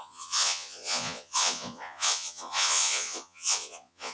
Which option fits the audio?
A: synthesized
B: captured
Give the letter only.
A